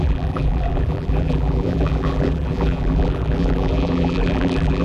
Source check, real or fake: fake